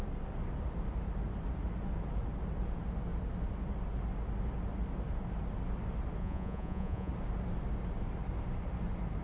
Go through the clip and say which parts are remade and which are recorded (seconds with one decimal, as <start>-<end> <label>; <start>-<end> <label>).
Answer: 0.0-6.2 recorded; 6.2-7.1 remade; 7.1-9.2 recorded